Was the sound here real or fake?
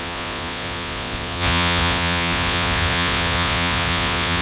fake